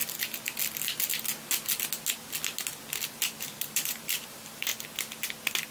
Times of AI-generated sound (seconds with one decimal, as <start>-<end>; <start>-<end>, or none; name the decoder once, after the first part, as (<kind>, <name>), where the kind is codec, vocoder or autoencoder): 3.4-4.7 (vocoder, BigVGAN v2)